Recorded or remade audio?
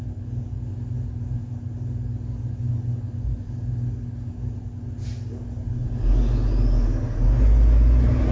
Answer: recorded